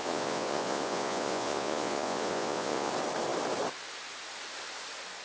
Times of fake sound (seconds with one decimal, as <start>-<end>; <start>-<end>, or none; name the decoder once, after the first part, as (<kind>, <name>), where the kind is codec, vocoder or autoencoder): 0.0-2.9 (vocoder, Vocos)

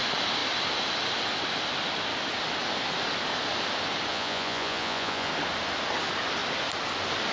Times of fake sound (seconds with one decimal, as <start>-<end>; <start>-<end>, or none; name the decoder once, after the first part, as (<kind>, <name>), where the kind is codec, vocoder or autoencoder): 4.1-5.3 (vocoder, Vocos)

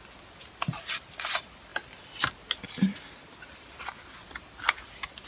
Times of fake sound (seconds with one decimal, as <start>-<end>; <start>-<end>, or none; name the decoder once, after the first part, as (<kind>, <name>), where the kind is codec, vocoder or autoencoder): none

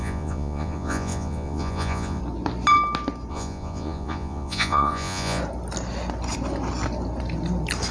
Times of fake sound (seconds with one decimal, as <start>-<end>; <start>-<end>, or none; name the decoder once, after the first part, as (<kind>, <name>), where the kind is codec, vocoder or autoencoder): 0.0-2.2 (vocoder, Vocos); 3.3-5.4